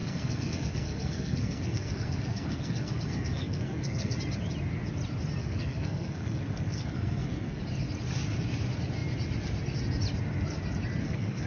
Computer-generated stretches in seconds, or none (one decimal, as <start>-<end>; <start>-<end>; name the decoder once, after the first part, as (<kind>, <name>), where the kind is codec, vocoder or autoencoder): 0.0-4.2 (codec, SNAC); 5.4-7.6; 11.0-11.5

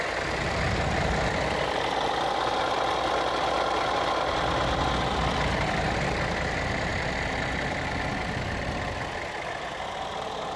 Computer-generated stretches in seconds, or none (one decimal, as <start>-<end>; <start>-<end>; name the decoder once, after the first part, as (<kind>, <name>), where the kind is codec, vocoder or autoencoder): none

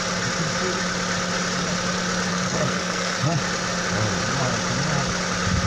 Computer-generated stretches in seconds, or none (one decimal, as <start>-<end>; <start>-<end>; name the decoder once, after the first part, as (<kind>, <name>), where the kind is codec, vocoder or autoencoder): 2.3-3.4 (codec, SNAC)

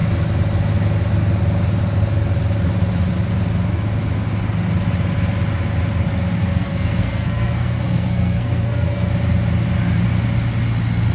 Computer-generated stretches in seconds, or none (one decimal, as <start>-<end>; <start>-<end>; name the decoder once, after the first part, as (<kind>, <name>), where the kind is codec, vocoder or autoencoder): 6.4-9.1 (codec, SNAC)

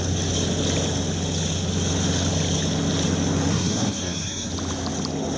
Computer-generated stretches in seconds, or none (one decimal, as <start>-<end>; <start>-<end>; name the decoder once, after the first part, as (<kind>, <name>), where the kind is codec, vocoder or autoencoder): 3.5-4.5 (codec, SNAC)

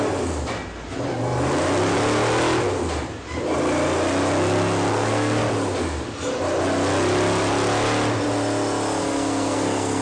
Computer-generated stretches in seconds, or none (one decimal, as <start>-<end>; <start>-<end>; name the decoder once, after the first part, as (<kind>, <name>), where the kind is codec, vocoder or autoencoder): 4.9-5.4 (codec, SNAC); 9.0-10.0

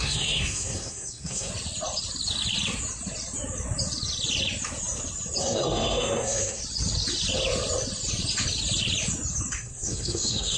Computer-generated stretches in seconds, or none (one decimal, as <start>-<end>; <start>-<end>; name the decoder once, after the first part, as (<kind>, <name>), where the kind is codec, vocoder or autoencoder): 0.0-1.5 (codec, SNAC); 5.4-6.6; 9.5-10.6

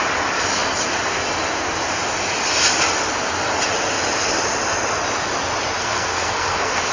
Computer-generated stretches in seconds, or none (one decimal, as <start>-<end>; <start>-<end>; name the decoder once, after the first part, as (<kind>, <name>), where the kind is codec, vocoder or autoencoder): 5.8-6.9 (codec, SNAC)